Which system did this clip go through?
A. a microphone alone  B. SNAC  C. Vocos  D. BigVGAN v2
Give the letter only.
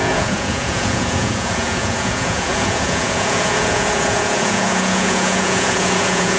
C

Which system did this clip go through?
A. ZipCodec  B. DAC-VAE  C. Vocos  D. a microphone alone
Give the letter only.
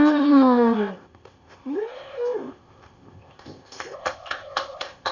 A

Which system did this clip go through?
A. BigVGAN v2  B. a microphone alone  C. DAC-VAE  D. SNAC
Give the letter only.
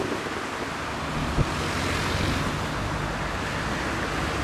B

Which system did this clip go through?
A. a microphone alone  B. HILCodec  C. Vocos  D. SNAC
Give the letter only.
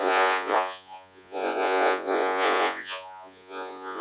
C